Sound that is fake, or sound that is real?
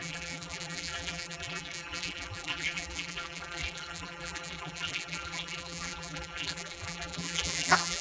fake